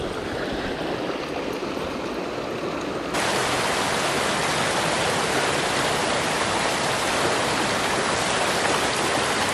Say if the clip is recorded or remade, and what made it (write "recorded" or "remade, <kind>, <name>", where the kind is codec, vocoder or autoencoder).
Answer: recorded